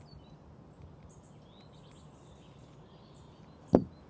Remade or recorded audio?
recorded